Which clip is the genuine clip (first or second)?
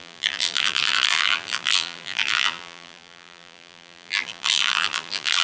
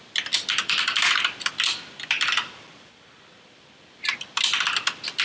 second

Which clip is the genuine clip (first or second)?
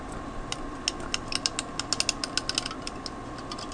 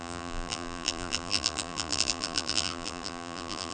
first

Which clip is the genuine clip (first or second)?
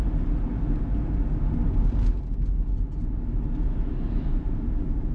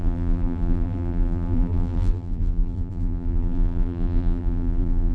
first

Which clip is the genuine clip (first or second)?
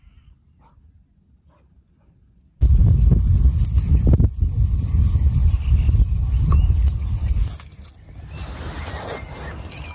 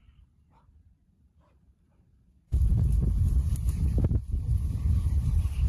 first